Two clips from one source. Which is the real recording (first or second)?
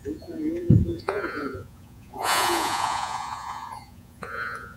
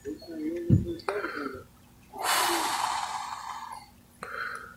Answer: second